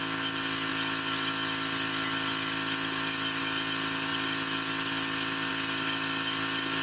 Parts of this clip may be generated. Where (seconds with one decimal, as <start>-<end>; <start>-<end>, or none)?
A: none